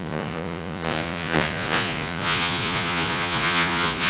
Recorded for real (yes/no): no